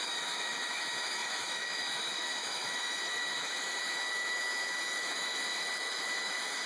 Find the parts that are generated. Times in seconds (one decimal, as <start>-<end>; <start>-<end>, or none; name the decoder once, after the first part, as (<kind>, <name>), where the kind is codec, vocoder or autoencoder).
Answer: 0.0-6.7 (autoencoder, DAC-VAE)